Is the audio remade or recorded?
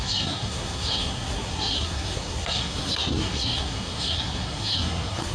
remade